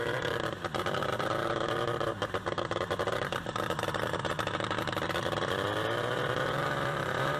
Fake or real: fake